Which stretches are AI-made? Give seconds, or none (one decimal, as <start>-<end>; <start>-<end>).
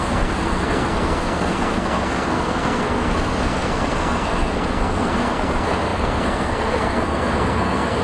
0.0-8.0